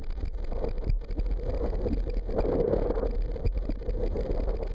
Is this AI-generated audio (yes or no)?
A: no